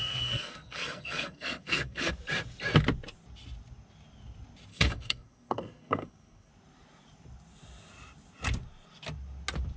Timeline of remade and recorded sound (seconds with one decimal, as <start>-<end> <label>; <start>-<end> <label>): 0.0-2.1 remade; 2.1-4.7 recorded; 4.7-6.5 remade; 6.5-9.8 recorded

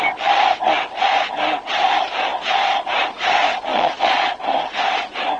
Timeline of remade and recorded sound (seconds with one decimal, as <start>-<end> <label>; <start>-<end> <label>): 0.0-3.7 recorded; 3.7-4.3 remade; 4.3-5.4 recorded

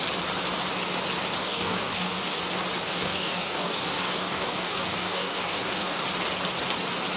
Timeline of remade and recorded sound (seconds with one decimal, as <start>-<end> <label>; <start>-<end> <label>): 0.0-1.4 recorded; 1.4-2.4 remade; 2.4-2.8 recorded; 2.8-6.0 remade; 6.0-7.2 recorded

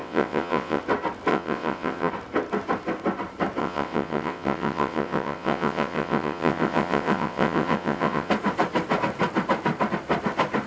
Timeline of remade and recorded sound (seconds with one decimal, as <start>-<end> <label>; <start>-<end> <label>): 0.0-0.8 remade; 0.8-1.3 recorded; 1.3-2.1 remade; 2.1-3.6 recorded; 3.6-8.3 remade; 8.3-10.7 recorded